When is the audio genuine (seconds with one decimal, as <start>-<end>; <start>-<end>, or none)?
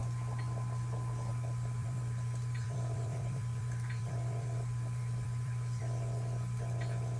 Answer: 0.0-1.8; 5.8-7.2